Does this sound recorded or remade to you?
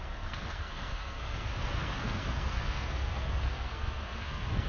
remade